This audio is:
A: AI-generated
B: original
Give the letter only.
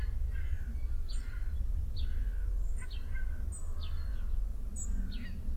B